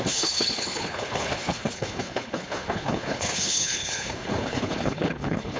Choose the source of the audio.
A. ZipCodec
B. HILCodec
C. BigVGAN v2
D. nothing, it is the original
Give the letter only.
B